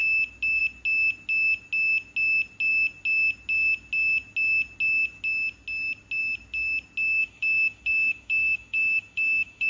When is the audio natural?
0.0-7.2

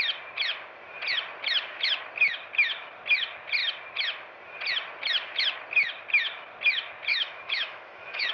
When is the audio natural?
0.0-7.1

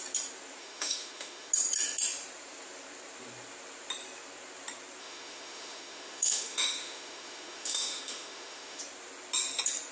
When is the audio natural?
0.0-0.6; 1.5-5.0; 8.8-9.9